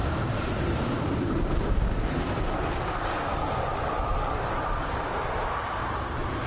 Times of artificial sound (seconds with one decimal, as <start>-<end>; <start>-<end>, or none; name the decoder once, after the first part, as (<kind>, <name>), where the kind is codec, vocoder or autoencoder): none